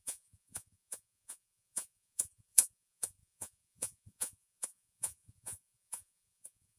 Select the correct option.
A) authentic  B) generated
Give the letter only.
B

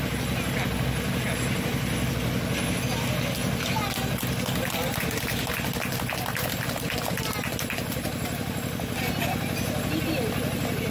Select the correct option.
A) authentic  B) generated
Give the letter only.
A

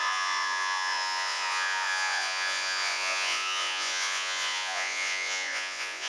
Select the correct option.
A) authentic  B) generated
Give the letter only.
B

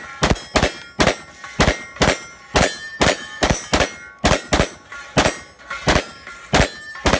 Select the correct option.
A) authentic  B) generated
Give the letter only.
A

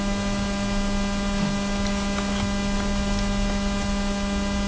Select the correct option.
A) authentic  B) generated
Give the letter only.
A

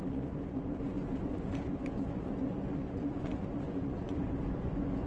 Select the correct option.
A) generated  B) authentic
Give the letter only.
A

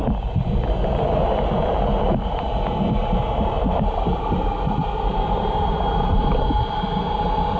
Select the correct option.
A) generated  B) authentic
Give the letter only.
B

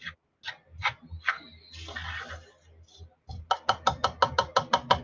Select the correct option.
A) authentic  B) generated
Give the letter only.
A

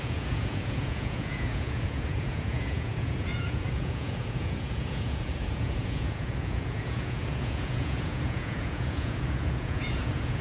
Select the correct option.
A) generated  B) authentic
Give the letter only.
A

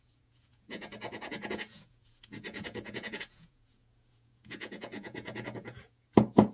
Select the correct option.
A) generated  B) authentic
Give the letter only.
A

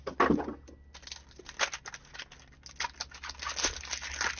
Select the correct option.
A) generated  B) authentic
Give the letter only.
B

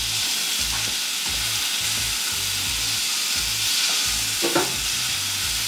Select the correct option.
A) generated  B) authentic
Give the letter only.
B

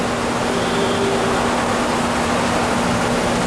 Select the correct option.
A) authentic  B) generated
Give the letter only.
A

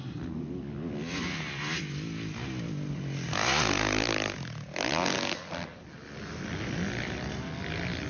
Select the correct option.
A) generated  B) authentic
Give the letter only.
B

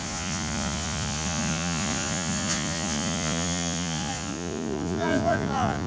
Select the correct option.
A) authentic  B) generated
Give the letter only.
B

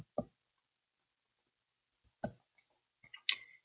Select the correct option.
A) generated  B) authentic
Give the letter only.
B